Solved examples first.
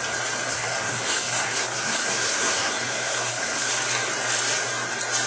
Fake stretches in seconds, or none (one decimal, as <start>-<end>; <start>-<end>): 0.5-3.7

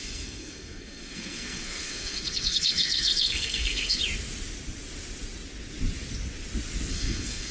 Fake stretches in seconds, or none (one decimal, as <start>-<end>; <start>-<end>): 0.0-4.0; 6.9-7.5

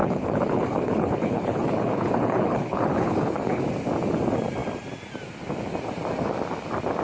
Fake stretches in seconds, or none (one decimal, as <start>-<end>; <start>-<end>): 0.0-3.6

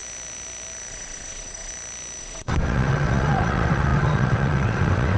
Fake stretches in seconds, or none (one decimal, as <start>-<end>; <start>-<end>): 0.9-1.7; 2.2-5.2

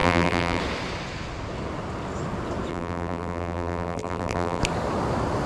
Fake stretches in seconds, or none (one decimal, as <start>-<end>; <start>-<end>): 0.0-0.6; 2.7-4.6

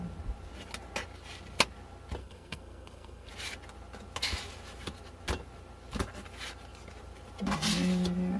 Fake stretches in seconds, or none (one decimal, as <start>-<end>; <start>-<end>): 2.2-3.3